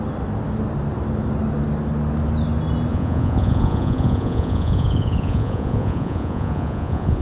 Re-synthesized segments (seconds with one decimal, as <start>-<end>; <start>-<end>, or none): 2.9-7.2